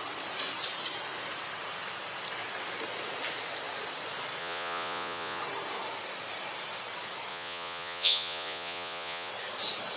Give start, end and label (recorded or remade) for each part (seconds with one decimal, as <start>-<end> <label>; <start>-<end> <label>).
0.0-4.4 recorded; 4.4-5.4 remade; 5.4-7.3 recorded; 7.3-9.3 remade; 9.3-10.0 recorded